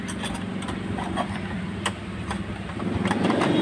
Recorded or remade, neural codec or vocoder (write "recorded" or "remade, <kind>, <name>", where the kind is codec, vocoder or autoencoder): remade, vocoder, BigVGAN v2